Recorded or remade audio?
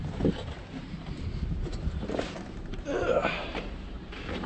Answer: remade